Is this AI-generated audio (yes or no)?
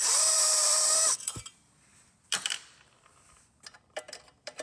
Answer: yes